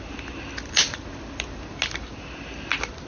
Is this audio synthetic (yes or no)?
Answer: no